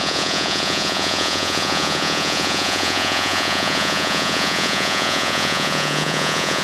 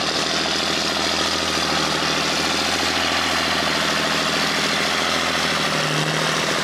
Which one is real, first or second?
second